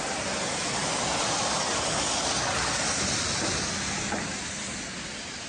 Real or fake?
real